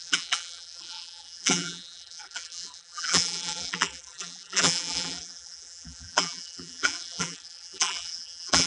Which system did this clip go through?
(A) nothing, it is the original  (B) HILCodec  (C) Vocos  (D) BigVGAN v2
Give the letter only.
D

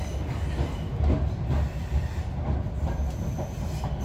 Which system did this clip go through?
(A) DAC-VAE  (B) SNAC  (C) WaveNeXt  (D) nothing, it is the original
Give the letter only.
D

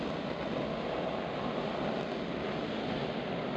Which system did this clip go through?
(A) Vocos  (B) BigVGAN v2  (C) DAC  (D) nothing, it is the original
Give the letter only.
D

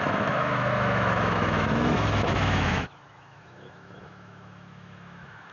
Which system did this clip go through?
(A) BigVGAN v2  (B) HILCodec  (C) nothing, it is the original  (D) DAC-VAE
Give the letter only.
D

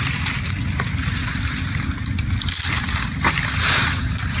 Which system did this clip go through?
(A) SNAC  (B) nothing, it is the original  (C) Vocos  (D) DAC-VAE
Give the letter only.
B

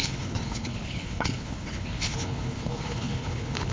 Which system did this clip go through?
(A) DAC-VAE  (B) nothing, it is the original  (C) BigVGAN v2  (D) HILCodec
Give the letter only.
D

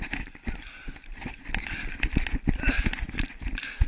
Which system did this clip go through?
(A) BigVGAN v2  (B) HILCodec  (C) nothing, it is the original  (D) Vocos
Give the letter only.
C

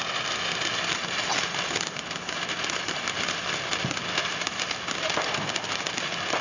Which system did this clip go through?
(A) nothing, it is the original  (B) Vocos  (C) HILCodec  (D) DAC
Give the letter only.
A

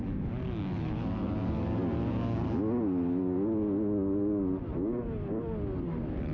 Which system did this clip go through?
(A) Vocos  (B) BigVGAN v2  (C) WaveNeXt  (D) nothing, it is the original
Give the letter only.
D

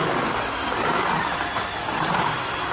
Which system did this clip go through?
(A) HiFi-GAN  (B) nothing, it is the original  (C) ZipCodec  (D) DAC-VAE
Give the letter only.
B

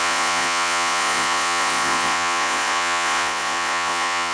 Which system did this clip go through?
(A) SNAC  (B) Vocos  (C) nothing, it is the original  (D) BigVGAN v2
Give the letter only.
B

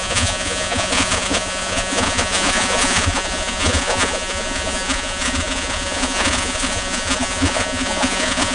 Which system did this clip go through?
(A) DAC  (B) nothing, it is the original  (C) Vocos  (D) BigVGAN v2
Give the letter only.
C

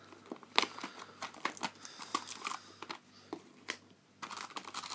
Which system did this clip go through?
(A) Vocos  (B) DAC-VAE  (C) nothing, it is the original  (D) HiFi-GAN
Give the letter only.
C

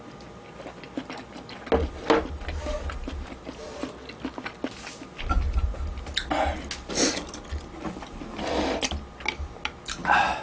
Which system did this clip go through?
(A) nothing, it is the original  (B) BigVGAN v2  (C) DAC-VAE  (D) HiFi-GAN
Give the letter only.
A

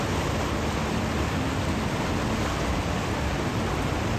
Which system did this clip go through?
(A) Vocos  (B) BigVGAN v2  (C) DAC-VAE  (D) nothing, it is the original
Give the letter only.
D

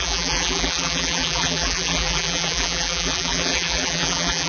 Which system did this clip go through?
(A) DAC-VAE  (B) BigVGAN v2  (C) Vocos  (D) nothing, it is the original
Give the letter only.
B